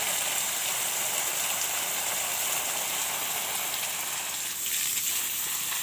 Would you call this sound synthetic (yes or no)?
no